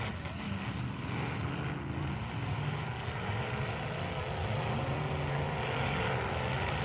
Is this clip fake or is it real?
real